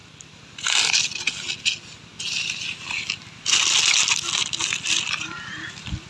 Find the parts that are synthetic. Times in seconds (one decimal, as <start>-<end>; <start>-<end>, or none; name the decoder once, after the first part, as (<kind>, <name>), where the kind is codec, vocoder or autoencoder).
none